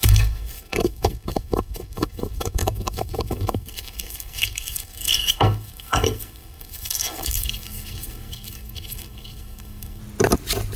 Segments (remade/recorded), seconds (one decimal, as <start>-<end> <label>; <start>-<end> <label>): 0.0-10.0 remade; 10.0-10.8 recorded